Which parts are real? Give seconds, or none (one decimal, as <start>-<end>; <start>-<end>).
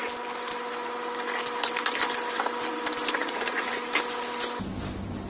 0.0-3.2; 3.7-5.3